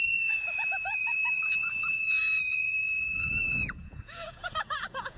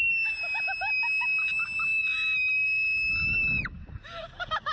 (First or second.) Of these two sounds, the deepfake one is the first